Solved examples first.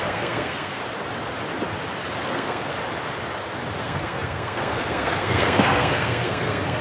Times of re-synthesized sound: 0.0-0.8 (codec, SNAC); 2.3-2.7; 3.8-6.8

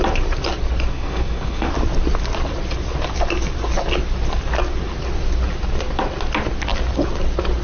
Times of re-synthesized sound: 0.9-1.7 (codec, SNAC)

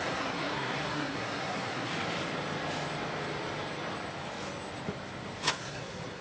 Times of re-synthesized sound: 0.0-1.9 (codec, SNAC); 5.5-6.2

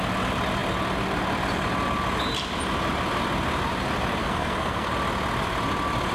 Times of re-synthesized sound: 4.2-4.9 (codec, SNAC)

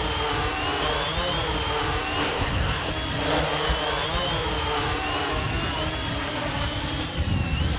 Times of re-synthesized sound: 2.2-2.9 (codec, SNAC)

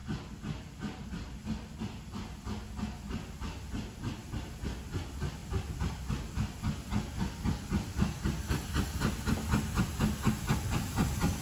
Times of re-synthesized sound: none